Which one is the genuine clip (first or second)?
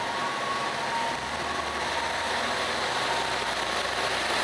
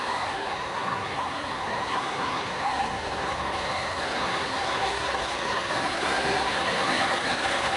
first